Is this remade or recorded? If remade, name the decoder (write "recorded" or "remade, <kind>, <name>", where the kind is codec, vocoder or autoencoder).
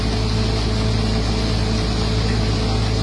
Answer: recorded